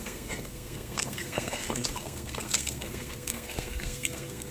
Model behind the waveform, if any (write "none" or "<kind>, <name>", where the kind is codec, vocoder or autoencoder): codec, SNAC